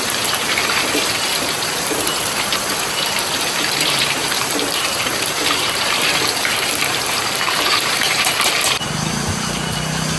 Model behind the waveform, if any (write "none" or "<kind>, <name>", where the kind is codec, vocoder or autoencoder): vocoder, BigVGAN v2